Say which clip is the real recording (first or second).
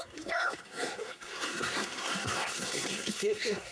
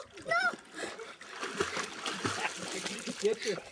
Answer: second